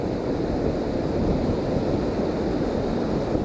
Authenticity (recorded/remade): recorded